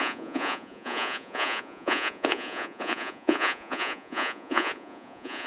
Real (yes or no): no